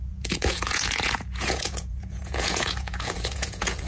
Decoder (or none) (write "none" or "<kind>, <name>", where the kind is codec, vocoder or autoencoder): vocoder, Vocos